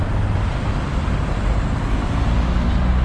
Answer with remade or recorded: recorded